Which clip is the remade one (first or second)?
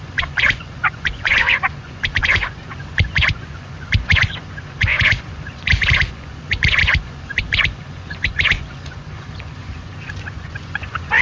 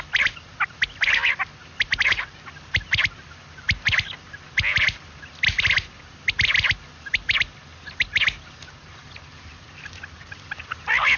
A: first